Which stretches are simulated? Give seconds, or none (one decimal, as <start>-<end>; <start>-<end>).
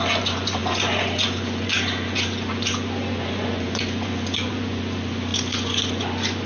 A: 0.0-6.5